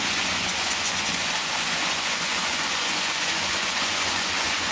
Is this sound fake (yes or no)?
yes